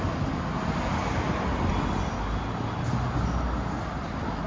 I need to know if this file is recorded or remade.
recorded